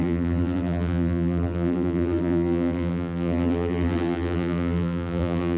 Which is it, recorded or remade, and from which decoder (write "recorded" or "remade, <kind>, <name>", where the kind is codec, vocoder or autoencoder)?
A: remade, vocoder, BigVGAN v2